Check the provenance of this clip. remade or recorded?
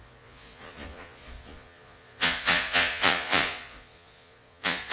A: remade